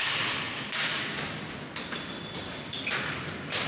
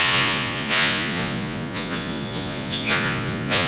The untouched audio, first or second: first